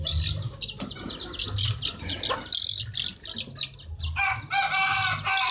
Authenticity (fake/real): real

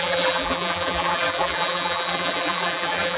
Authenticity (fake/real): fake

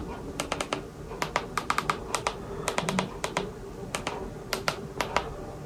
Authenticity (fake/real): real